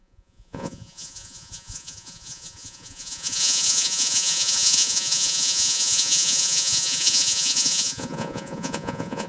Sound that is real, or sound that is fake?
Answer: fake